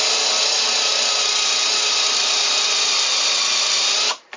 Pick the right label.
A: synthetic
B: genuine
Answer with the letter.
B